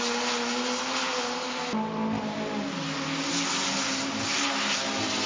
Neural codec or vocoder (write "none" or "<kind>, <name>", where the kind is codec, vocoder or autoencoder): none